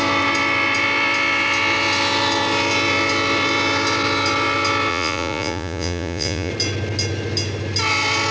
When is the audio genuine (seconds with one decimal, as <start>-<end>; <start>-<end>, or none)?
0.0-4.9; 6.5-8.3